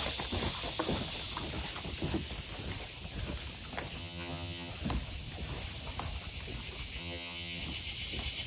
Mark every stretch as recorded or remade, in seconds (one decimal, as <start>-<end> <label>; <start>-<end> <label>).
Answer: 0.0-4.0 recorded; 4.0-4.7 remade; 4.7-7.0 recorded; 7.0-7.6 remade; 7.6-8.5 recorded